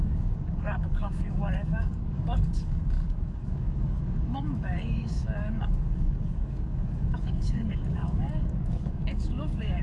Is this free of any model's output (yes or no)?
no